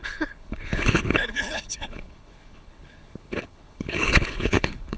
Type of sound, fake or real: fake